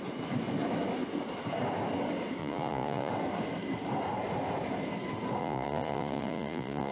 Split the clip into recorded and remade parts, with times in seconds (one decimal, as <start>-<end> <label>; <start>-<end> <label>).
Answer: 0.0-2.4 recorded; 2.4-3.1 remade; 3.1-5.4 recorded; 5.4-6.9 remade